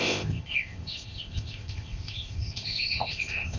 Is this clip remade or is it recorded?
remade